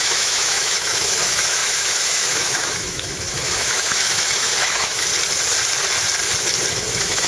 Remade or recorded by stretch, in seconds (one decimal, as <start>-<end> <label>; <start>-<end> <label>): 0.0-5.1 remade; 5.1-6.7 recorded; 6.7-7.3 remade